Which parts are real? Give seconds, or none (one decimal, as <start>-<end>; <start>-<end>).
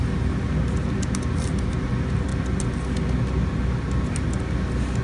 0.0-5.0